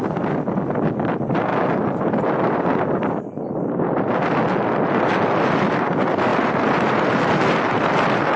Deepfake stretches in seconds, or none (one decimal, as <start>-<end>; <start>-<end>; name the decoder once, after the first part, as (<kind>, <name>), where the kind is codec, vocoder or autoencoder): none